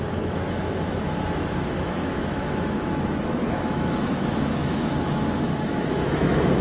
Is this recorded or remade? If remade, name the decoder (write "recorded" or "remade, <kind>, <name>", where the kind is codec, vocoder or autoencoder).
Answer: remade, autoencoder, DAC-VAE